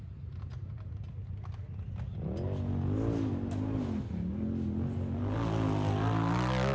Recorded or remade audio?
recorded